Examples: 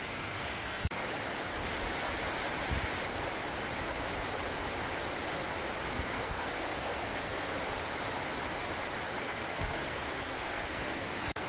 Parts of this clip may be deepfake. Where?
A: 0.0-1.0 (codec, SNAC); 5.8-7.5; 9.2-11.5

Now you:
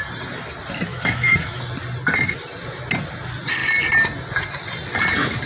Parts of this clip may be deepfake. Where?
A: 0.9-1.6 (autoencoder, DAC-VAE)

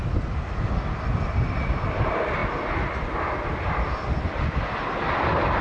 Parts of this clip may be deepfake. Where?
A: none

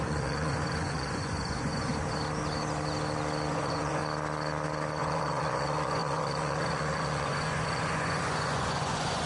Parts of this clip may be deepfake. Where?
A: 0.0-1.9 (vocoder, Vocos); 3.5-4.0; 5.0-9.3

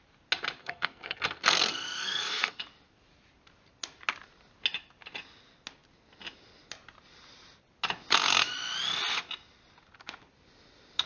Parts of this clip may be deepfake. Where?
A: 0.6-2.6 (codec, SNAC)

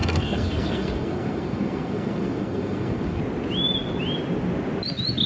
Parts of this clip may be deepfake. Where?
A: 0.0-3.2 (codec, SNAC)

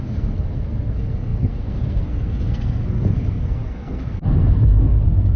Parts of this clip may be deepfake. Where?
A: 0.0-5.4 (codec, SNAC)